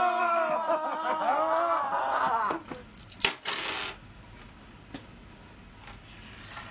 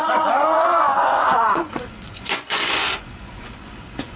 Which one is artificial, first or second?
second